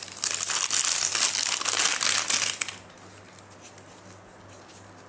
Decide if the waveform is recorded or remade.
recorded